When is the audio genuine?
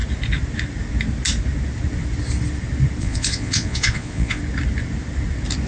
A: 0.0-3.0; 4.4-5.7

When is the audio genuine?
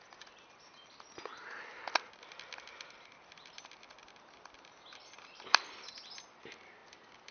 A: 0.0-7.3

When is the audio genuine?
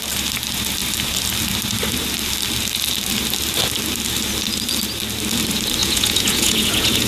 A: 0.0-5.8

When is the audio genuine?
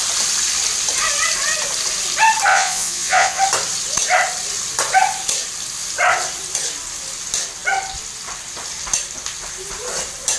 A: 0.0-2.5; 3.4-10.4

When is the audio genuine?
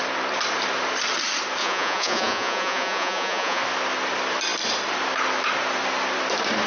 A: 0.0-1.6; 3.6-6.7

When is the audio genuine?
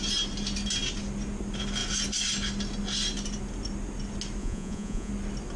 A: 0.0-4.4; 5.1-5.6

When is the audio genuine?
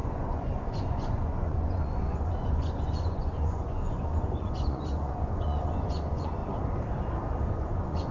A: 6.4-7.5